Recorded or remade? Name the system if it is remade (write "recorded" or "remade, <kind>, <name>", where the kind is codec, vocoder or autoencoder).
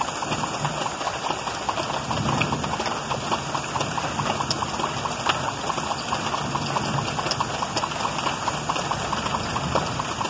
recorded